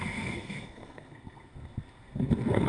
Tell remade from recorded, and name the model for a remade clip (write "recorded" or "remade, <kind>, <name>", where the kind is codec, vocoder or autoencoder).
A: remade, codec, SNAC